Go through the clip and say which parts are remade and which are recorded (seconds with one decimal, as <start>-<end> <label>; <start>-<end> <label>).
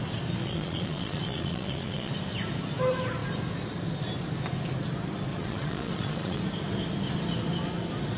0.0-0.4 recorded; 0.4-2.1 remade; 2.1-5.3 recorded; 5.3-6.4 remade; 6.4-8.2 recorded